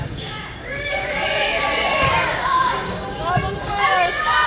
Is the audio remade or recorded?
remade